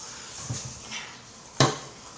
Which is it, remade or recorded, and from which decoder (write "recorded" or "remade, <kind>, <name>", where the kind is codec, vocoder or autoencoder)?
recorded